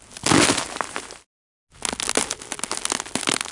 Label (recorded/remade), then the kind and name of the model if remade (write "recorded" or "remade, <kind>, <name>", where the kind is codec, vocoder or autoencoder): recorded